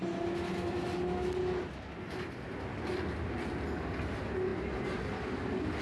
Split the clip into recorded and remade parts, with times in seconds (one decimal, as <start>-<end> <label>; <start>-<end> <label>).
0.0-5.8 recorded

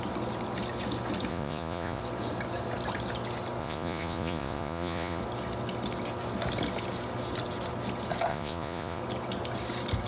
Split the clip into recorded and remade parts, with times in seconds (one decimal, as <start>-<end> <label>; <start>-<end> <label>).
0.0-1.3 recorded; 1.3-2.0 remade; 2.0-3.6 recorded; 3.6-5.2 remade; 5.2-8.3 recorded; 8.3-9.0 remade; 9.0-10.1 recorded

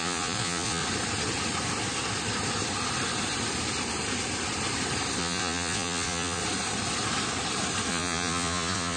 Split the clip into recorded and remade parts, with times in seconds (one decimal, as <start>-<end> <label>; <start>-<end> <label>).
0.0-0.8 remade; 0.8-5.2 recorded; 5.2-6.4 remade; 6.4-7.9 recorded; 7.9-9.0 remade

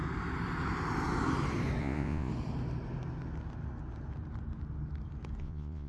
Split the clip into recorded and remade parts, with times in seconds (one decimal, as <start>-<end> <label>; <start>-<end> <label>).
0.0-1.8 recorded; 1.8-2.3 remade; 2.3-5.4 recorded; 5.4-5.9 remade